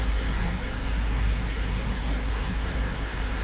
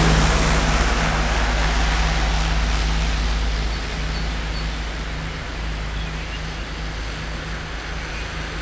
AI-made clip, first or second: first